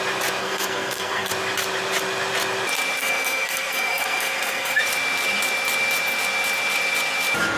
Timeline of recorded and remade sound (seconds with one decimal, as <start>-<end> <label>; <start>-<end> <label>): 0.0-0.4 recorded; 0.4-1.3 remade; 1.3-3.0 recorded; 3.0-4.8 remade; 4.8-7.6 recorded